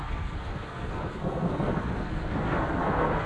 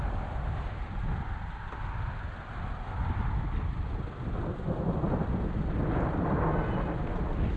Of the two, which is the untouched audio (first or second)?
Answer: second